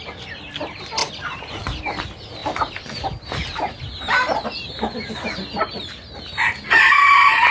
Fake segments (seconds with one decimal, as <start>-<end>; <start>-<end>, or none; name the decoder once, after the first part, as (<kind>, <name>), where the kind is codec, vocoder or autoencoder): 1.0-1.8 (vocoder, BigVGAN v2)